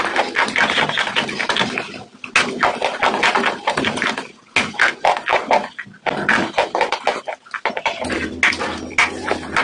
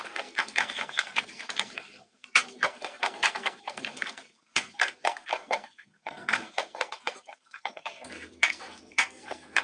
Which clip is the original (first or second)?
first